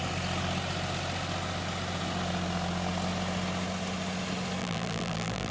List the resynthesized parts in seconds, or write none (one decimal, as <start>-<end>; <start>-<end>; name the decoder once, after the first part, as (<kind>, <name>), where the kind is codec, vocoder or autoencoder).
4.6-5.5 (vocoder, BigVGAN v2)